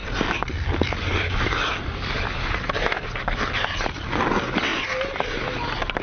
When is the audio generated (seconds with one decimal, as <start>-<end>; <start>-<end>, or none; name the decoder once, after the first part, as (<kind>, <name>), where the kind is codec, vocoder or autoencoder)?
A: none